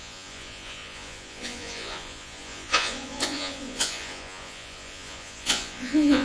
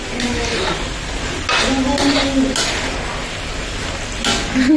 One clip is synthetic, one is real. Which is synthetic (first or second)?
first